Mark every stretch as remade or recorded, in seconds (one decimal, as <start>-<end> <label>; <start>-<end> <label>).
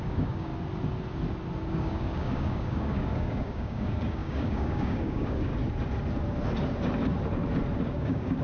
0.0-0.5 remade; 0.5-1.7 recorded; 1.7-5.5 remade; 5.5-7.8 recorded; 7.8-8.4 remade